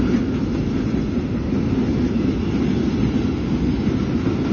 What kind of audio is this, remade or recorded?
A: recorded